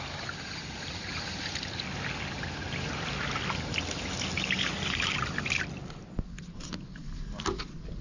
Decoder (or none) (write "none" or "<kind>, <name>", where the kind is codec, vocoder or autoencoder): none